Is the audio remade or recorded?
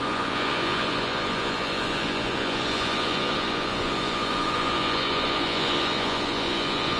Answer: remade